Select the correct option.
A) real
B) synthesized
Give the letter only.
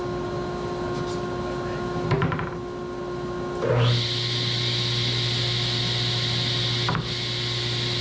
A